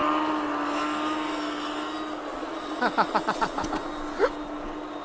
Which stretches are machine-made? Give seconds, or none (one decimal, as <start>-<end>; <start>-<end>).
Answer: 2.3-3.9